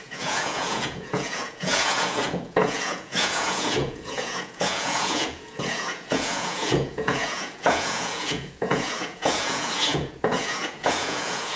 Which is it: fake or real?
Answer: fake